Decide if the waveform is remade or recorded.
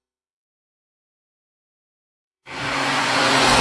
remade